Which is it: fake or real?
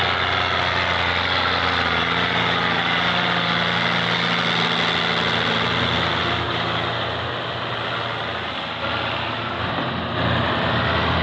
real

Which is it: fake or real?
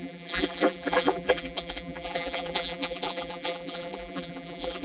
fake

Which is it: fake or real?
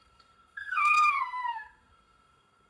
fake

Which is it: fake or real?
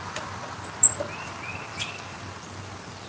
real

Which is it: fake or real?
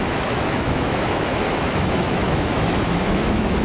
fake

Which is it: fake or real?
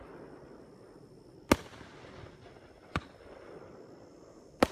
real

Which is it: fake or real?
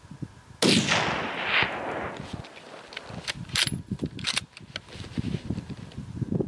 real